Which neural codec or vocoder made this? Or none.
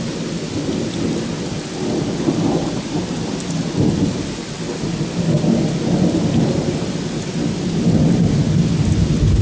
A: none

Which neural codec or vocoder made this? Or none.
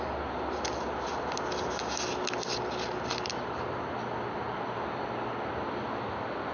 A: none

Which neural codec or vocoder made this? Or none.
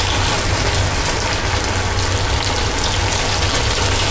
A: none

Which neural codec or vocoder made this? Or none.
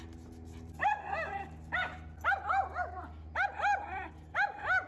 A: none